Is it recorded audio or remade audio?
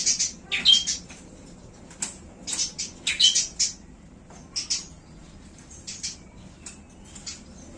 recorded